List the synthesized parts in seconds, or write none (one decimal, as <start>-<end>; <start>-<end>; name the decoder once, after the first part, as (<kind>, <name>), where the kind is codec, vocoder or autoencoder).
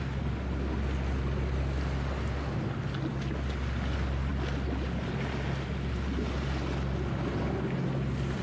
none